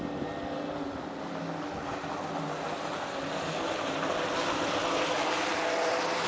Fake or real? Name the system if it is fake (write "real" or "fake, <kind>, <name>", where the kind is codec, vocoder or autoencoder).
real